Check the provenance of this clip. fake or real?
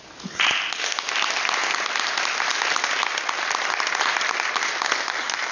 real